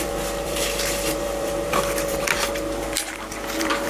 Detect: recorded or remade remade